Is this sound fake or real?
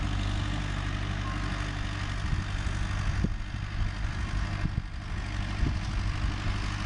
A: real